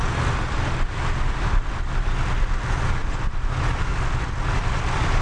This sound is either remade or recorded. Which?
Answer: recorded